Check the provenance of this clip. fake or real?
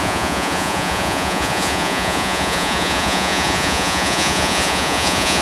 fake